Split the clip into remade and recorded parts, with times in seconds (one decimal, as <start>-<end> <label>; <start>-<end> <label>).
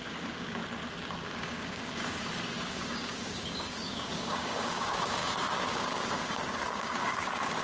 0.0-0.6 remade; 0.6-1.4 recorded; 1.4-2.0 remade; 2.0-2.6 recorded; 2.6-7.6 remade